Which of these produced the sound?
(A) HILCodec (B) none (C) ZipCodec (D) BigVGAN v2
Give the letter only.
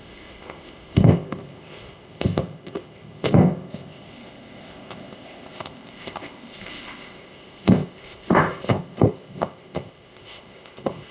C